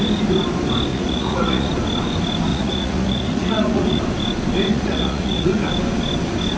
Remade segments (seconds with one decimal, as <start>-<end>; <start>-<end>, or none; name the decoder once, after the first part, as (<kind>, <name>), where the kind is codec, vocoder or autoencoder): 0.9-1.7 (vocoder, Vocos); 2.5-4.0; 4.7-5.7